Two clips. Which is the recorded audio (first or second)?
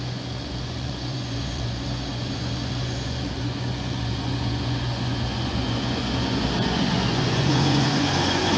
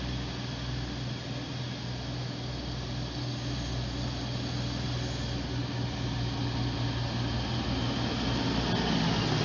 second